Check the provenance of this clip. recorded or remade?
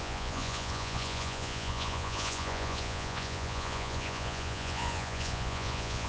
remade